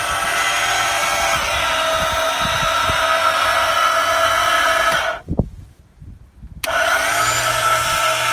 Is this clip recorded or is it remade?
recorded